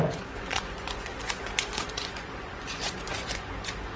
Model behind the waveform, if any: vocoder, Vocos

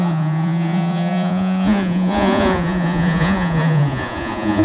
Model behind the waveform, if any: vocoder, Vocos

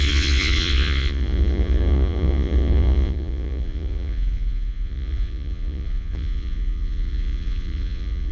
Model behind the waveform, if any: vocoder, Vocos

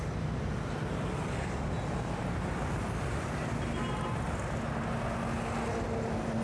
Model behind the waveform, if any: none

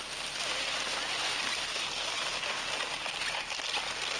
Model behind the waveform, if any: none